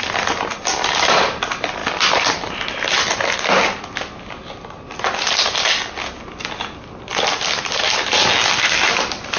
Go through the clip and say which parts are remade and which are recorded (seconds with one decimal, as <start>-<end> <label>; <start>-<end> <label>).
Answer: 0.0-9.4 recorded

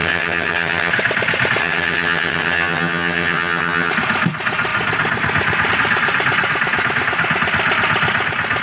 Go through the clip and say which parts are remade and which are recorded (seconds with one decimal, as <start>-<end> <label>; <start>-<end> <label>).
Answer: 0.0-0.9 remade; 0.9-1.6 recorded; 1.6-3.9 remade; 3.9-8.6 recorded

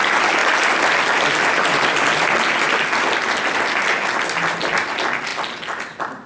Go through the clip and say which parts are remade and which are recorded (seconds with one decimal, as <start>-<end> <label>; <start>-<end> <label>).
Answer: 0.0-6.3 recorded

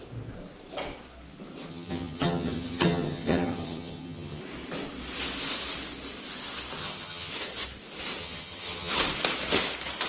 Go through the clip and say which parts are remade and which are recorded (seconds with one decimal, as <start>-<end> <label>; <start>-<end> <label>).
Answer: 0.0-1.7 recorded; 1.7-4.4 remade; 4.4-6.8 recorded; 6.8-7.3 remade; 7.3-8.2 recorded; 8.2-8.9 remade; 8.9-10.1 recorded

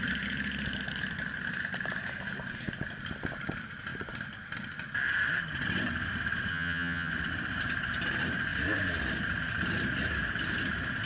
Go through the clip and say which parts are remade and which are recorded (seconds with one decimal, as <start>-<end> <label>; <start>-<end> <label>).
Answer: 0.0-6.5 recorded; 6.5-7.1 remade; 7.1-11.1 recorded

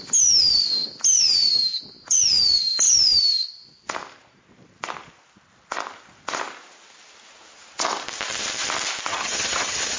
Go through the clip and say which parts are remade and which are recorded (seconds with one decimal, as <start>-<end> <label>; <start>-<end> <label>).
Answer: 0.0-9.1 recorded; 9.1-10.0 remade